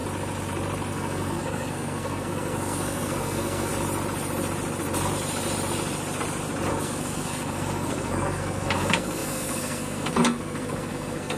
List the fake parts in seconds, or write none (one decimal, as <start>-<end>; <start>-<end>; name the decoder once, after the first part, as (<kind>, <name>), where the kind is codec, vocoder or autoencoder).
0.9-3.7 (codec, SNAC); 6.7-11.4